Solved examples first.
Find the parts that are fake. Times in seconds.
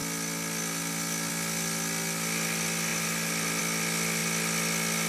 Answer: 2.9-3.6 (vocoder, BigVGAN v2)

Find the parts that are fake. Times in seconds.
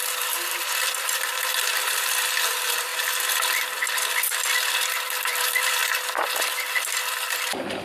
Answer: 0.0-2.9 (vocoder, BigVGAN v2); 4.7-5.8; 6.4-7.8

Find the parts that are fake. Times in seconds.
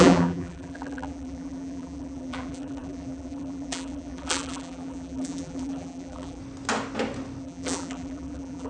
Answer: 0.0-6.4 (vocoder, BigVGAN v2); 7.4-8.7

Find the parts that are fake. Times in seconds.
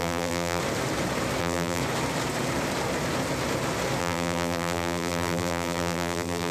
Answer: 0.0-0.6 (vocoder, BigVGAN v2); 1.4-1.8; 4.0-6.5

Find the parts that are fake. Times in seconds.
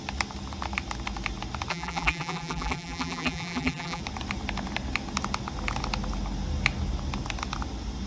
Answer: 1.7-4.0 (vocoder, BigVGAN v2)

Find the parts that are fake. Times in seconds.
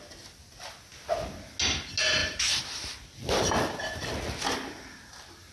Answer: 2.2-3.0 (vocoder, BigVGAN v2)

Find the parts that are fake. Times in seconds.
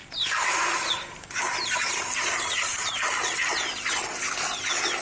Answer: 0.0-3.0 (vocoder, BigVGAN v2)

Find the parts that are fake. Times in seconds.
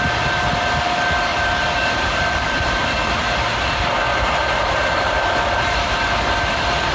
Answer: 1.3-2.7 (vocoder, BigVGAN v2); 4.1-5.1